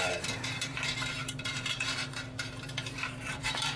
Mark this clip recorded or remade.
remade